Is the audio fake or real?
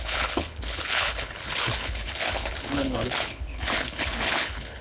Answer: fake